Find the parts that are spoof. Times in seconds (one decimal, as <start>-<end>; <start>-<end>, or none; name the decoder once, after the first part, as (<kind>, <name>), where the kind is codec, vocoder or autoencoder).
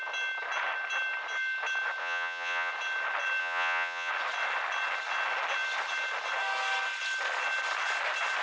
2.0-2.7 (vocoder, Vocos); 3.4-4.1